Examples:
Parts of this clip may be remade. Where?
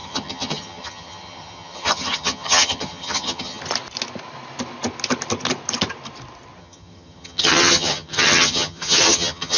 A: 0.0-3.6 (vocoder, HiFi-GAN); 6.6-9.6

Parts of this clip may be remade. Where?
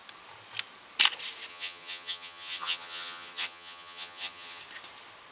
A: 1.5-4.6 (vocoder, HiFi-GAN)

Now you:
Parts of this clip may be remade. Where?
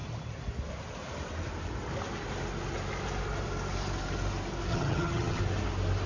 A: 4.7-5.4 (vocoder, HiFi-GAN)